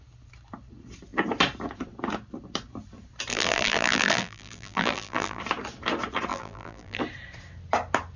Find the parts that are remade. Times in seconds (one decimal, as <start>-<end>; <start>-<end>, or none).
3.3-5.4; 6.3-7.0